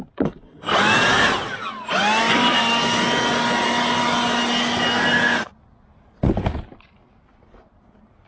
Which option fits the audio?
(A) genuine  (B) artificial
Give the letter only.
A